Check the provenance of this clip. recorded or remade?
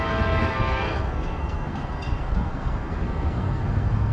remade